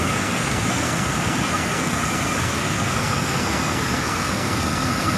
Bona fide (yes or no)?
no